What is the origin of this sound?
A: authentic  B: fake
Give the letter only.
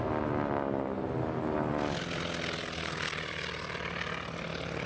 A